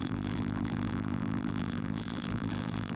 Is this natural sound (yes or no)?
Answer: no